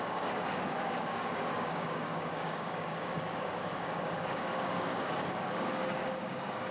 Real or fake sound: fake